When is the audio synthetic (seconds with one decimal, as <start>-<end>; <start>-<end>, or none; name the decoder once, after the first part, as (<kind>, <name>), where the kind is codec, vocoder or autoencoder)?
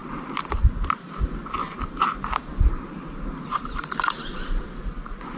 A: 0.0-0.7 (vocoder, BigVGAN v2); 1.6-4.8